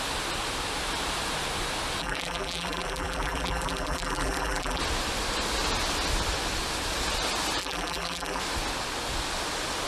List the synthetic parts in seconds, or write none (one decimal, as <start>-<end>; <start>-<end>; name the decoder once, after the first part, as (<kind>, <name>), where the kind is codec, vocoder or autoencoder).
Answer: 2.0-4.8 (vocoder, BigVGAN v2); 7.6-8.4